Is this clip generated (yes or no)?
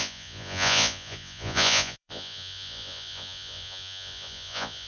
yes